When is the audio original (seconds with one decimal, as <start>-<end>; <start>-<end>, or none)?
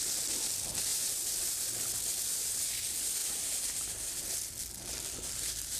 0.0-0.9; 2.7-3.2; 4.2-5.8